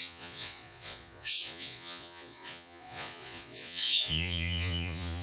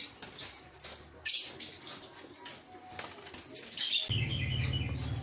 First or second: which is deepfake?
first